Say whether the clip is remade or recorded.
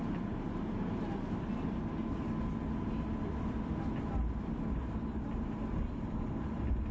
recorded